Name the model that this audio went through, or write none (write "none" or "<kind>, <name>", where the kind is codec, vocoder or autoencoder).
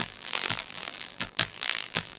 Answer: vocoder, BigVGAN v2